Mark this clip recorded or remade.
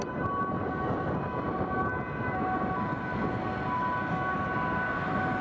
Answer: recorded